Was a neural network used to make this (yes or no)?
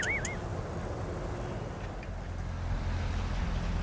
no